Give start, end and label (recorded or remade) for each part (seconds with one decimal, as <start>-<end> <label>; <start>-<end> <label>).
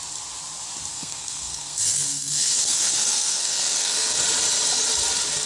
0.0-0.9 recorded; 0.9-4.2 remade; 4.2-5.5 recorded